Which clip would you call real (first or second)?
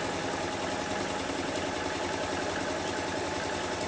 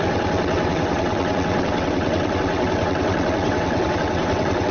first